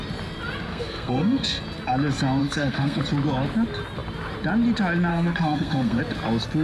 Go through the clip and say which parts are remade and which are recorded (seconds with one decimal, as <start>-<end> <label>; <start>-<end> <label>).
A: 0.0-0.7 recorded; 0.7-1.6 remade; 1.6-2.4 recorded; 2.4-3.0 remade; 3.0-5.1 recorded; 5.1-6.0 remade; 6.0-6.6 recorded